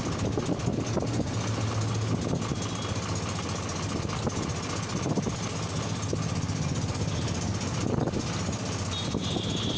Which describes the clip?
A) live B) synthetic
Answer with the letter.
A